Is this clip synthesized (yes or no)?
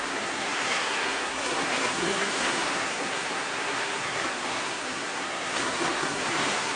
yes